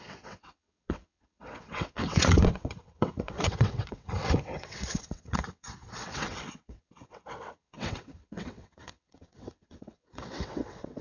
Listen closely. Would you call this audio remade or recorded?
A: remade